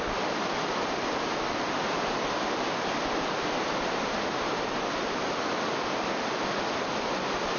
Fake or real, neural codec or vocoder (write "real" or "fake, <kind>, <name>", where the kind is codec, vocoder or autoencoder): real